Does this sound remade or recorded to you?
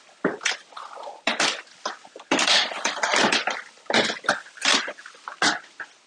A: recorded